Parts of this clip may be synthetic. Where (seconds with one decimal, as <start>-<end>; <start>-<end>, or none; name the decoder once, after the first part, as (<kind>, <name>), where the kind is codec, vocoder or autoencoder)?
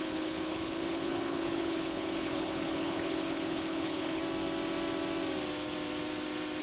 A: 0.0-4.2 (codec, HILCodec)